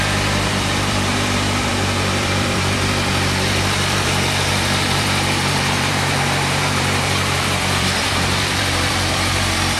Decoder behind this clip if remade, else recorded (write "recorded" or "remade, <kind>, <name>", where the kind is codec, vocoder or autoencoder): remade, vocoder, BigVGAN v2